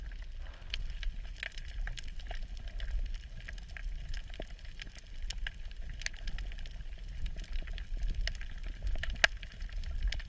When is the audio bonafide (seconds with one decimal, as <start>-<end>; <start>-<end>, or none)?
0.0-10.3